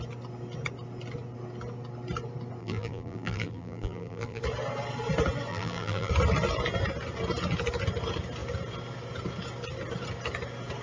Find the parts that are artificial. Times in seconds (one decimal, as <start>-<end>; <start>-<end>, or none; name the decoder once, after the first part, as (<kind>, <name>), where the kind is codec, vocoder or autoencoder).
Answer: 2.6-4.4 (vocoder, BigVGAN v2); 5.5-6.1

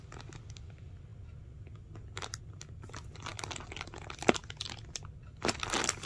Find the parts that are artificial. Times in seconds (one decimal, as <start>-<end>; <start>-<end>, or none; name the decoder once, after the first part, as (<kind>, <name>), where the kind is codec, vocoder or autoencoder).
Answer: none